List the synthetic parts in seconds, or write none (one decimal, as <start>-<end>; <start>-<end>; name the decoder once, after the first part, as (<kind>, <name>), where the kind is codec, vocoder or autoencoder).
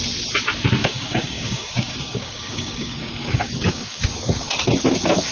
0.8-4.0 (codec, DAC)